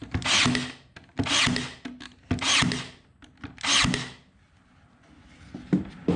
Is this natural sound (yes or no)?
yes